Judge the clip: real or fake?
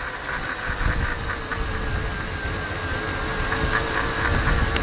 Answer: real